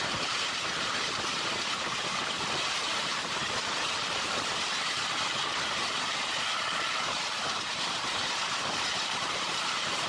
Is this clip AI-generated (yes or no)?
yes